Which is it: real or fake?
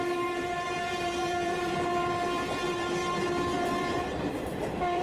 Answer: fake